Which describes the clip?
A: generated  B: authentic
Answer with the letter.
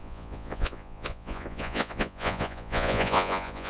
A